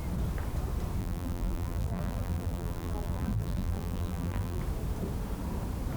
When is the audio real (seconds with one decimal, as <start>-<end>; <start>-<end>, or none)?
0.0-1.0; 4.6-6.0